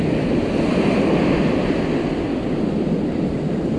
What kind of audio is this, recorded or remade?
recorded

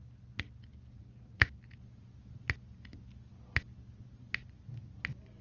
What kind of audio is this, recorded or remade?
recorded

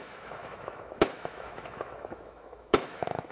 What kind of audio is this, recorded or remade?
remade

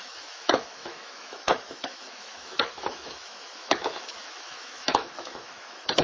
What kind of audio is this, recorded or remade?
remade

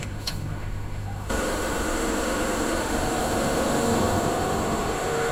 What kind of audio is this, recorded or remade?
remade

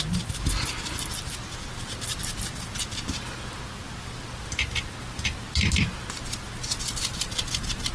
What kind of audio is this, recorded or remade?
recorded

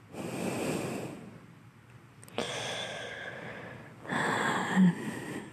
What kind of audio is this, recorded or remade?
recorded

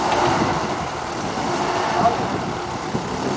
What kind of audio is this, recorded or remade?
recorded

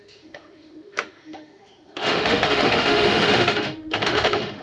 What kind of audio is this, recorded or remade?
remade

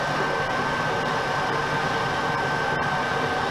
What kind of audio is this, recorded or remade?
recorded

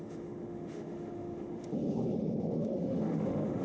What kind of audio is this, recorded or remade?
remade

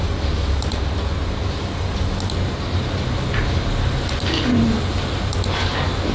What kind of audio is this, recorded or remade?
recorded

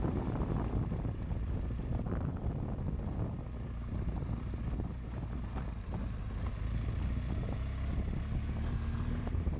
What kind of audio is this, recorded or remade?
recorded